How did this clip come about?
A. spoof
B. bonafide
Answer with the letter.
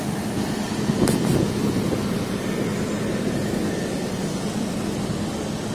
B